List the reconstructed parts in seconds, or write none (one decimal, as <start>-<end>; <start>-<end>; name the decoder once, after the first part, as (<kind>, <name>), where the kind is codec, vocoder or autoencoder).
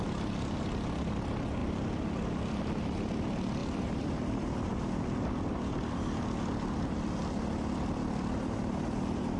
1.6-2.6 (vocoder, BigVGAN v2); 3.6-5.6